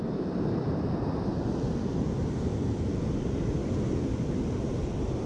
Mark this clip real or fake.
real